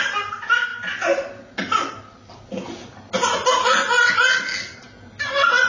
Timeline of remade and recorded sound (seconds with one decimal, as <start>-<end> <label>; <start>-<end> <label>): 0.0-5.7 recorded